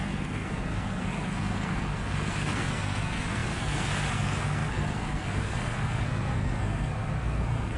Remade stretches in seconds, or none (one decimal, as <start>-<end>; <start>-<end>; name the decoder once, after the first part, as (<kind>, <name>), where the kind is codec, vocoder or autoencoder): 0.0-7.8 (codec, SNAC)